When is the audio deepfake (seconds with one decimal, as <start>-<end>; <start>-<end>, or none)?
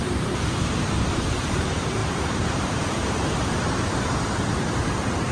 0.0-5.3